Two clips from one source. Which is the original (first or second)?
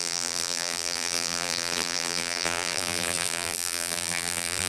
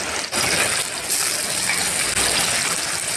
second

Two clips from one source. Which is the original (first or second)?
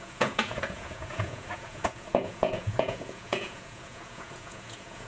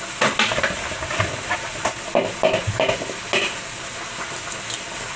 second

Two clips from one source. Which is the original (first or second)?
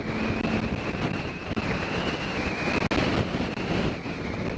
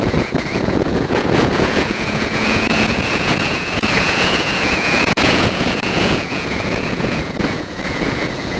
first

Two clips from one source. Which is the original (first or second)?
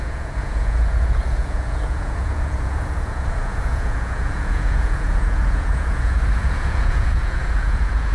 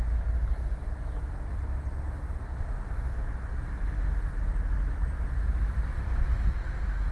second